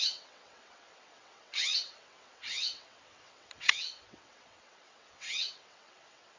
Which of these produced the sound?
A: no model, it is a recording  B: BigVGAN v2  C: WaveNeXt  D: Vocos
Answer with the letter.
C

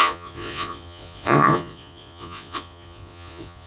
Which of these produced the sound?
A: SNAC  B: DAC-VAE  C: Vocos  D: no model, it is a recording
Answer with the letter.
C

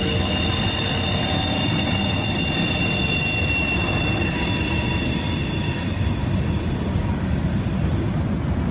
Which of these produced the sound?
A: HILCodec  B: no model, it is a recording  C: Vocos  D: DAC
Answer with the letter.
B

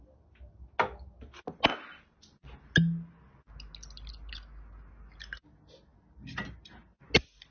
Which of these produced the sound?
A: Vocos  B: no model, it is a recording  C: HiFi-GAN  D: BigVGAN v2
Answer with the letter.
B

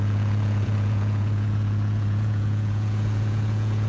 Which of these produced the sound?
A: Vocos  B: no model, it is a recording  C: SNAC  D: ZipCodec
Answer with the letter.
A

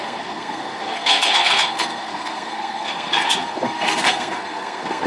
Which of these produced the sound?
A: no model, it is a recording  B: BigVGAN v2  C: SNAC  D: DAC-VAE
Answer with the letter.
C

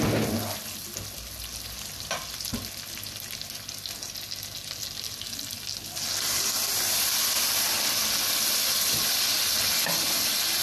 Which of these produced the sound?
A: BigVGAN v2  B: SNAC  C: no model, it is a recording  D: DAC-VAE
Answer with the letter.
C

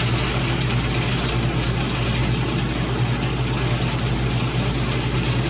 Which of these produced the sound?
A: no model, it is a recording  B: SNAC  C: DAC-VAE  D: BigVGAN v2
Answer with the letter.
A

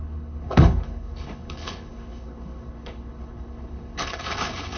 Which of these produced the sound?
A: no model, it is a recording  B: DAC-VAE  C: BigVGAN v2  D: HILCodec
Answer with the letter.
D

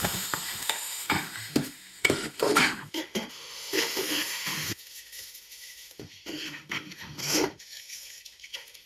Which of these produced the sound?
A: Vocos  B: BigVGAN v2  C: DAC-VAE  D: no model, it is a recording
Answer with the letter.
C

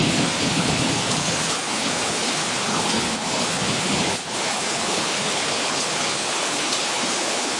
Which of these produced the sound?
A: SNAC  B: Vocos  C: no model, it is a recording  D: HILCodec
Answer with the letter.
D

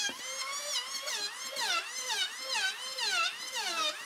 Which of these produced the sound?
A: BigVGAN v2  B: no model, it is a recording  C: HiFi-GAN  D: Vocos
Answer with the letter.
A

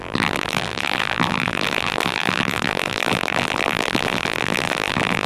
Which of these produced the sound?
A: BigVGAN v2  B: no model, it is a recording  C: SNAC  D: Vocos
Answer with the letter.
A